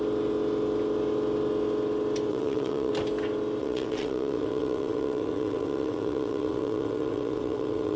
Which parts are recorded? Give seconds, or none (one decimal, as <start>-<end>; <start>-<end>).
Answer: 0.0-2.3; 2.9-3.6